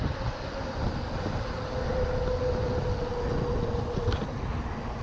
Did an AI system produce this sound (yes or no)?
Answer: no